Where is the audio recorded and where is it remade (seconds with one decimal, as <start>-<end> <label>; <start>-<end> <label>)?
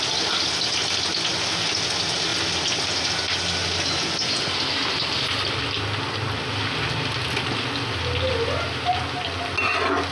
0.0-10.1 recorded